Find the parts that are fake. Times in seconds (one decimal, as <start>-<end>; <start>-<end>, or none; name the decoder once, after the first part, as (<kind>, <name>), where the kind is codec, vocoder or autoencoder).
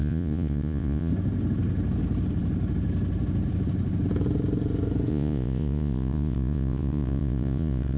0.0-1.1 (vocoder, Vocos); 5.1-8.0